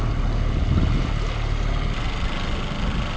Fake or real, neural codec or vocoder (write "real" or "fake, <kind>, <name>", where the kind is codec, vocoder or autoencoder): real